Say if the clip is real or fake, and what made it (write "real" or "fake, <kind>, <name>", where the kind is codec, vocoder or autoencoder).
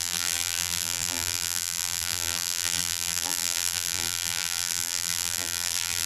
fake, vocoder, BigVGAN v2